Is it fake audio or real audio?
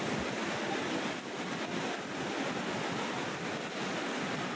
real